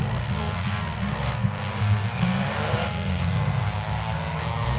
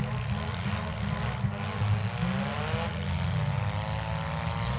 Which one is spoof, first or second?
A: first